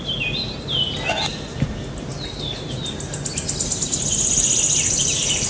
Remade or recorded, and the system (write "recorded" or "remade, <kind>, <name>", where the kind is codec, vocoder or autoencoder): recorded